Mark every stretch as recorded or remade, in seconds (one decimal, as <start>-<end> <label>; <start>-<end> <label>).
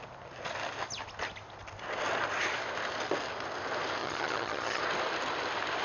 0.0-4.0 recorded; 4.0-4.8 remade; 4.8-5.8 recorded